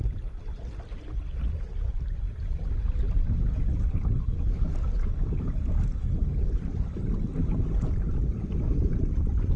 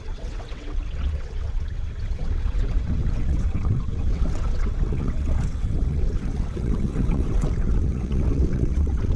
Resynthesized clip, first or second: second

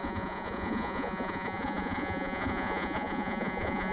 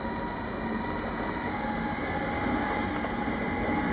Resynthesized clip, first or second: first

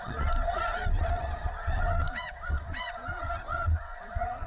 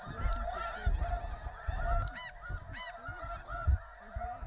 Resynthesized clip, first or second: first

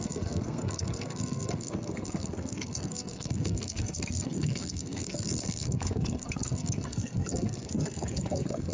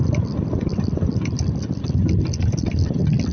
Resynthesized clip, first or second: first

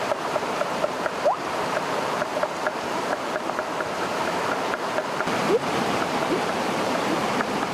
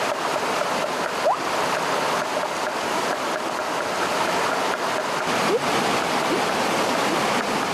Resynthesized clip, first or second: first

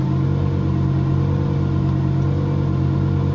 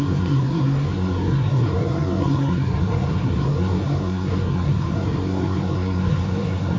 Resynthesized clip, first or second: second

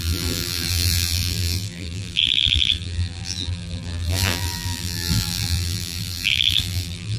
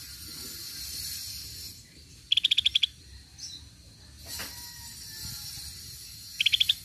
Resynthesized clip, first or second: first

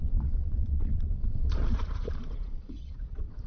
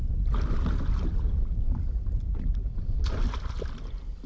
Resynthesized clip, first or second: first